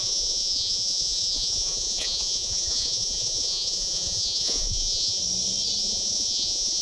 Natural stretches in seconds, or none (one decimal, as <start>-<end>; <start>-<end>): 5.2-5.8